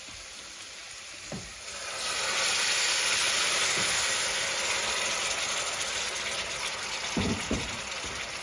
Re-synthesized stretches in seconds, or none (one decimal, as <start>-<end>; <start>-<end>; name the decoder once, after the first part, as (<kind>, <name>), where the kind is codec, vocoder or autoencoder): none